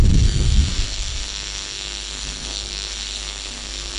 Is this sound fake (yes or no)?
yes